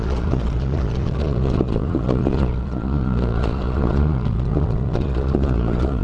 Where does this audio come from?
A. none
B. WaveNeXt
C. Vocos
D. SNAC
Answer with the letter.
C